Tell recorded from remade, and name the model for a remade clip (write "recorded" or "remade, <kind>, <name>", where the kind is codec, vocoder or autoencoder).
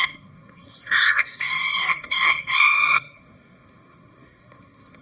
remade, codec, SNAC